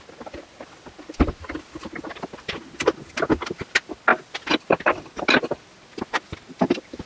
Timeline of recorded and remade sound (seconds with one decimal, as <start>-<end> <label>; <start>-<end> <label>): 0.0-7.1 recorded